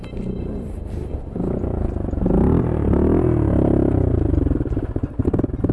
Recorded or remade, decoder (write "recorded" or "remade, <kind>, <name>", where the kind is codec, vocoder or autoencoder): recorded